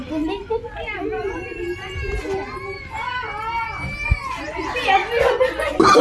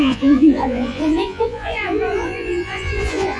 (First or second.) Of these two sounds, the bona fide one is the first